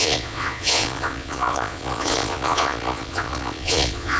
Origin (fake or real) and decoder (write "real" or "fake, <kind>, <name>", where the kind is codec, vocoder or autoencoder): fake, vocoder, Vocos